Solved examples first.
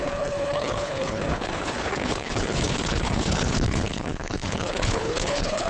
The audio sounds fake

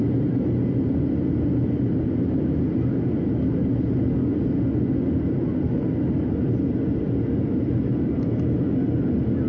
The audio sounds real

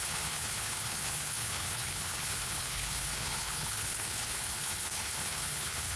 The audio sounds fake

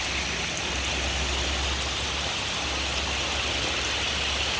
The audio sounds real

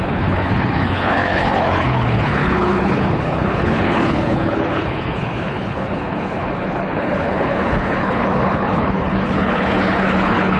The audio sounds fake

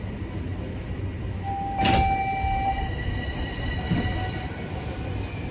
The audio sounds real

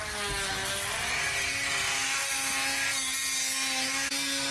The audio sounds real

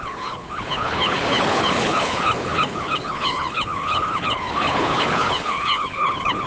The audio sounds fake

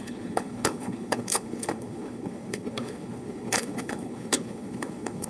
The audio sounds fake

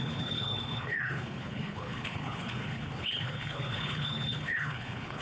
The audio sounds fake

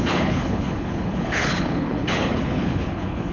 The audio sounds fake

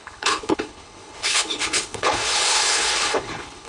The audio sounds fake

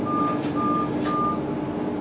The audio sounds real